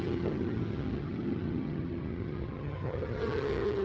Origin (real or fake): fake